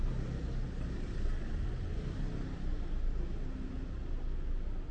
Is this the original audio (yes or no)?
yes